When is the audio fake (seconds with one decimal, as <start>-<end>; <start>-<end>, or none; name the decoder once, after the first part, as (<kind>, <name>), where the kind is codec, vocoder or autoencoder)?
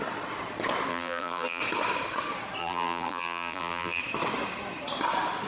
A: 0.9-1.6 (vocoder, BigVGAN v2); 2.6-4.0